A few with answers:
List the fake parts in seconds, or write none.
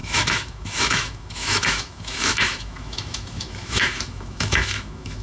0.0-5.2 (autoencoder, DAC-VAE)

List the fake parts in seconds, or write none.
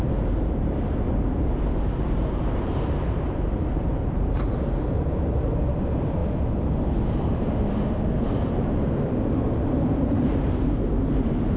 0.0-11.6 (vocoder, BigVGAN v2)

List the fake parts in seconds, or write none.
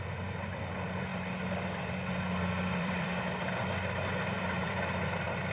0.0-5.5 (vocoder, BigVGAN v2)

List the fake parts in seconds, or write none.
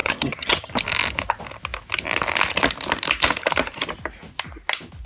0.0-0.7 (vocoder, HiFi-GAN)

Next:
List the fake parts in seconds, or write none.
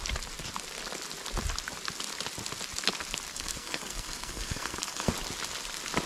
3.3-5.1 (codec, SNAC)